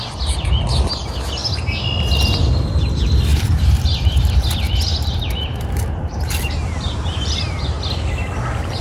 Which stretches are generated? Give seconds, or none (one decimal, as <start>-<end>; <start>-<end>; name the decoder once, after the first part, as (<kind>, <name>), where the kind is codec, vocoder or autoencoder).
3.3-7.8 (vocoder, BigVGAN v2)